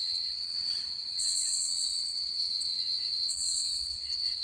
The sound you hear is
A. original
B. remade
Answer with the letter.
B